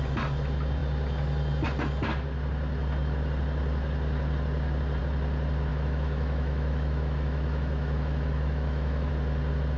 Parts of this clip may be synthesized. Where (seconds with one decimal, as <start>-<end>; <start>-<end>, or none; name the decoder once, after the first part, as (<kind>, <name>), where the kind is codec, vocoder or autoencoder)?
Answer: 5.7-9.1 (autoencoder, DAC-VAE)